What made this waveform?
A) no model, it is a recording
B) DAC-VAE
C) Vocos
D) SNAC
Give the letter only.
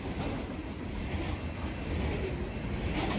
A